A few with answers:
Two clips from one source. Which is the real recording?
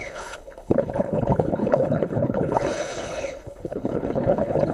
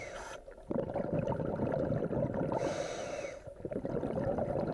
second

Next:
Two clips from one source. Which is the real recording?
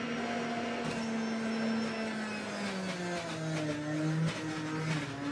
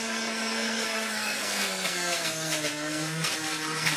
first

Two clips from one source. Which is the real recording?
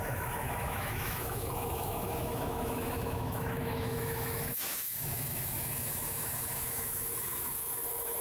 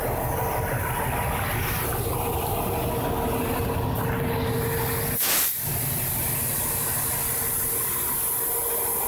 second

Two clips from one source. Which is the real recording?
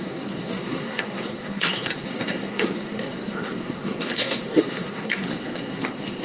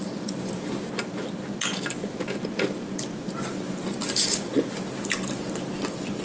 second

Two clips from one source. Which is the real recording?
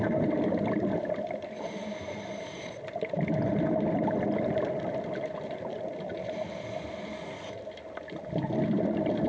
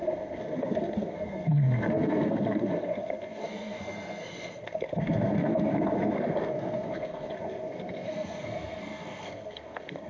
first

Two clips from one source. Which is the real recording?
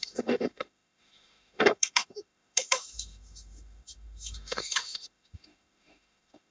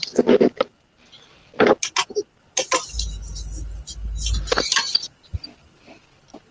second